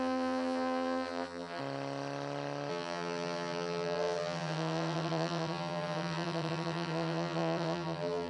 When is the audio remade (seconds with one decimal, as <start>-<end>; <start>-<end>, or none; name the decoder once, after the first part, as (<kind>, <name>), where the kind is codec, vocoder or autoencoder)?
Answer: 0.0-1.6 (vocoder, BigVGAN v2); 2.7-8.3